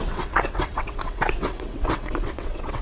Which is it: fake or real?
fake